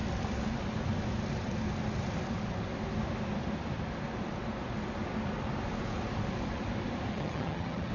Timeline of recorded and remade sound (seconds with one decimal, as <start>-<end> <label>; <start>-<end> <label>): 0.0-7.1 recorded; 7.1-7.9 remade